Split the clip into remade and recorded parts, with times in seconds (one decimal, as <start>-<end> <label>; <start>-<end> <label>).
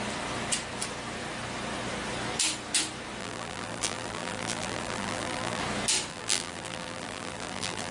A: 0.0-3.2 recorded; 3.2-5.6 remade; 5.6-6.1 recorded; 6.1-7.9 remade